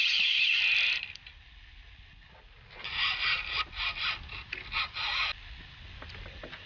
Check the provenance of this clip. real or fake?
real